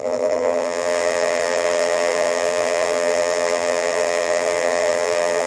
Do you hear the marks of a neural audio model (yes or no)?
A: yes